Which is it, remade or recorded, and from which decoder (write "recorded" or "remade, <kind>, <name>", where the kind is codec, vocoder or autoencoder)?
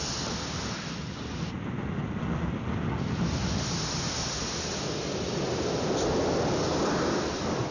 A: recorded